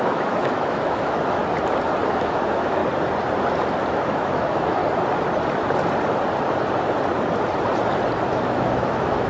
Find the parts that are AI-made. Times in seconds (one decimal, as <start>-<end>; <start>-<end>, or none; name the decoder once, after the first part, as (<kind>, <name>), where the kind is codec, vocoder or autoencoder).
0.0-1.4 (autoencoder, DAC-VAE); 2.1-2.8; 3.9-4.8; 8.3-9.3